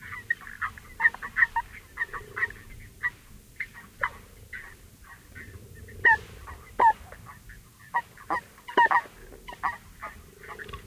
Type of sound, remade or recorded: recorded